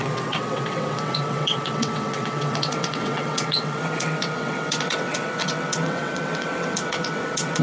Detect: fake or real fake